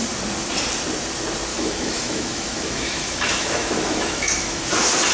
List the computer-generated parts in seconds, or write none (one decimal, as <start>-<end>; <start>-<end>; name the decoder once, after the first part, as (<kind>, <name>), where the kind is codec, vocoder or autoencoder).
1.5-4.6 (autoencoder, DAC-VAE)